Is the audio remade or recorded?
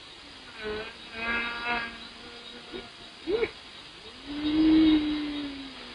recorded